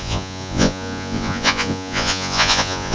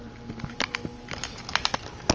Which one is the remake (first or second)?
first